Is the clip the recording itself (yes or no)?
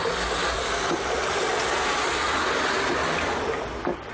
yes